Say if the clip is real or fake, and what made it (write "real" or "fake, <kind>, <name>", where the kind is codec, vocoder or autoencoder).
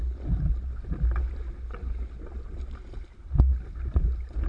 real